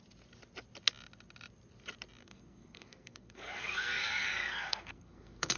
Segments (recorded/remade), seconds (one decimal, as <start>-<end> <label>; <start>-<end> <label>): 0.0-2.2 recorded; 2.2-5.6 remade